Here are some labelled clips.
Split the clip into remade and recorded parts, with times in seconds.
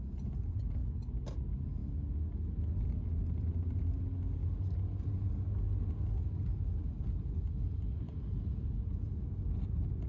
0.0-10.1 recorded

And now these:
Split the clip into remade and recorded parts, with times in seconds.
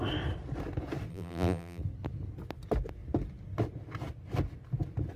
0.0-1.1 recorded; 1.1-1.8 remade; 1.8-5.2 recorded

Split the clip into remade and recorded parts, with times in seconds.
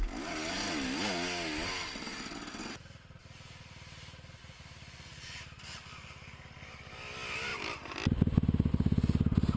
0.0-9.6 recorded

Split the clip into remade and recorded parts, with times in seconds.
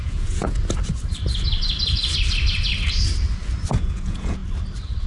0.0-0.6 remade; 0.6-3.7 recorded; 3.7-4.4 remade; 4.4-5.1 recorded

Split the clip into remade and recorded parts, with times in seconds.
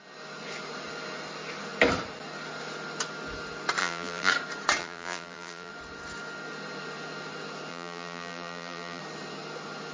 0.0-3.8 recorded; 3.8-4.3 remade; 4.3-4.8 recorded; 4.8-5.7 remade; 5.7-7.7 recorded; 7.7-9.0 remade; 9.0-9.9 recorded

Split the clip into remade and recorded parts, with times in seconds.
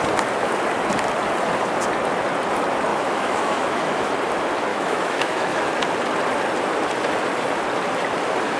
0.0-2.9 recorded; 2.9-4.1 remade; 4.1-4.7 recorded; 4.7-5.7 remade; 5.7-8.6 recorded